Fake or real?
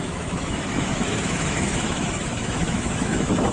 fake